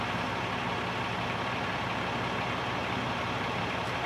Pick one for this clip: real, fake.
real